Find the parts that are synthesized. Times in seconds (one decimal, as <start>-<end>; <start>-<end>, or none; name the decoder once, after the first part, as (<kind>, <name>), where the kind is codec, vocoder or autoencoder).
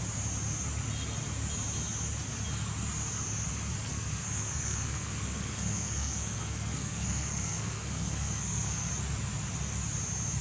3.9-8.9 (codec, SNAC)